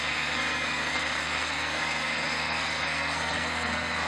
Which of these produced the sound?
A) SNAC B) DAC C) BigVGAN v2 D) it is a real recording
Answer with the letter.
A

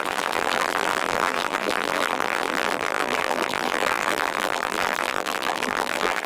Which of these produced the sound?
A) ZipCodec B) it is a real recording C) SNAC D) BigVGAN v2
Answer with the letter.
D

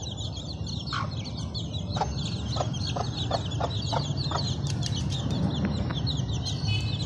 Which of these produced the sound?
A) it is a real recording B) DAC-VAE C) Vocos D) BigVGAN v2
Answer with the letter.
A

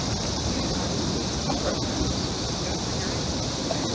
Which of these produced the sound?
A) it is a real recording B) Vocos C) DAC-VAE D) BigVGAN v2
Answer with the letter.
D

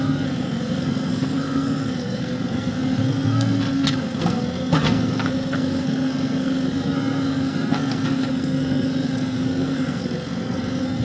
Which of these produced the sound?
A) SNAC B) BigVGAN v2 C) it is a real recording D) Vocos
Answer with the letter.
A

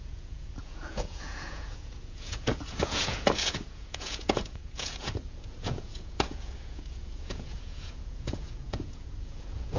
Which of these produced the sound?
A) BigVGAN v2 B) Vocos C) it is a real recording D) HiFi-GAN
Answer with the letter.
B